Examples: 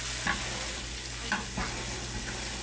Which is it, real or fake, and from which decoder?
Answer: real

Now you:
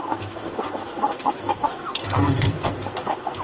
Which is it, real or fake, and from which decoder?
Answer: fake, codec, SNAC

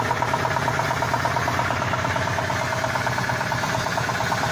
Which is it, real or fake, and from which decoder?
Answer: real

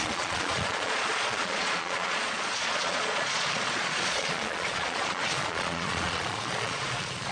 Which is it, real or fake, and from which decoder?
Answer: fake, vocoder, Vocos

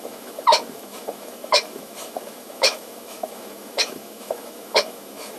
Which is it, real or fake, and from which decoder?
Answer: fake, autoencoder, DAC-VAE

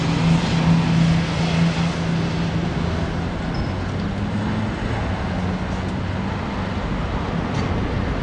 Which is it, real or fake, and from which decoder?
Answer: real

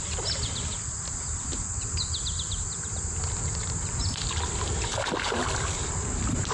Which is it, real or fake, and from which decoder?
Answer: real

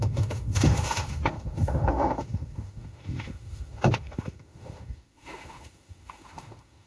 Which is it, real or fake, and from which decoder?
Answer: fake, autoencoder, DAC-VAE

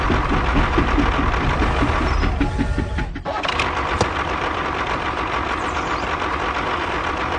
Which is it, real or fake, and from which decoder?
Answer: real